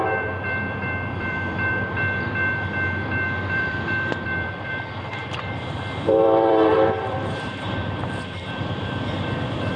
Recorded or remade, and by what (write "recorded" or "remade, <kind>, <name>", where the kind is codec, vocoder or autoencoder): remade, vocoder, BigVGAN v2